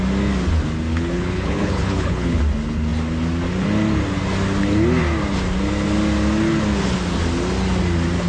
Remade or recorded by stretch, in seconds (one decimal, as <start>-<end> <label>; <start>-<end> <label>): 0.0-0.9 recorded; 0.9-2.4 remade; 2.4-8.3 recorded